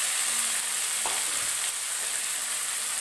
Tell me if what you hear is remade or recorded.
recorded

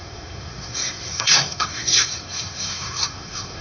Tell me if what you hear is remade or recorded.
remade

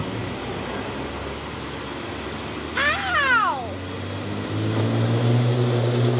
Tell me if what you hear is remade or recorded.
recorded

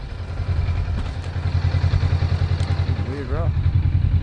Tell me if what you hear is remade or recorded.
recorded